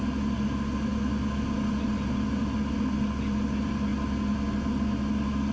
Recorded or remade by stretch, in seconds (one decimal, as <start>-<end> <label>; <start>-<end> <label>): 0.0-5.5 recorded